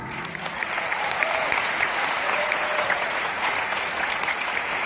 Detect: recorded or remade remade